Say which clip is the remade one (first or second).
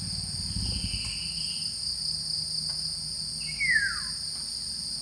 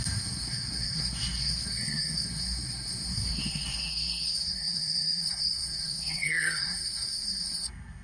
second